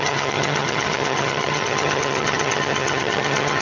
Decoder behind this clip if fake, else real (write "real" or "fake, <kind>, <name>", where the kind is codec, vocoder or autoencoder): fake, vocoder, HiFi-GAN